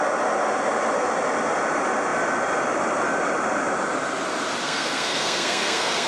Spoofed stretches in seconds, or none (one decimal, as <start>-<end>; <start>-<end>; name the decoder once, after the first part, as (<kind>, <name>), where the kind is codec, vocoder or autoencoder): 4.6-6.1 (codec, SNAC)